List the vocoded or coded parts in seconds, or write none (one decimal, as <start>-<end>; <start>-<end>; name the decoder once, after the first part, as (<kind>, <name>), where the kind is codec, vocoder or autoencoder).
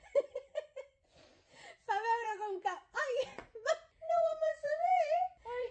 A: 0.0-5.7 (vocoder, Vocos)